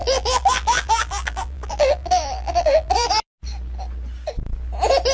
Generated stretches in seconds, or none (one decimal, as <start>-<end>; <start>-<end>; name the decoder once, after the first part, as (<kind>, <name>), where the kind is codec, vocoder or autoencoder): 0.0-3.1 (vocoder, BigVGAN v2)